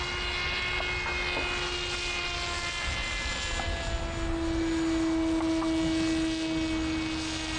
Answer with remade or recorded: recorded